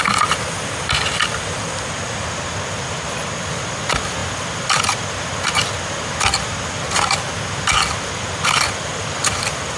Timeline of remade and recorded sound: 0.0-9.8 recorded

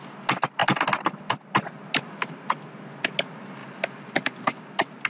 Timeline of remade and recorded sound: 0.0-3.6 recorded; 3.6-4.6 remade; 4.6-5.1 recorded

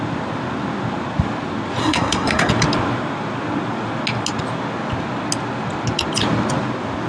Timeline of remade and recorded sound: 0.0-1.8 recorded; 1.8-2.5 remade; 2.5-7.1 recorded

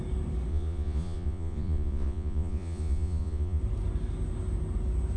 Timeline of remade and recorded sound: 0.0-0.5 recorded; 0.5-3.6 remade; 3.6-5.2 recorded